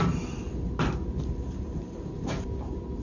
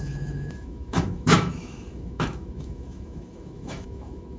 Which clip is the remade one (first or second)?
second